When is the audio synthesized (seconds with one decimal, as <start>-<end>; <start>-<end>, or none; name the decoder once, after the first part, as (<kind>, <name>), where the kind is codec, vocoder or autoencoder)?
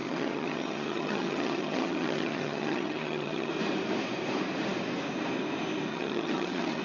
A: 0.0-3.5 (vocoder, HiFi-GAN); 5.9-6.8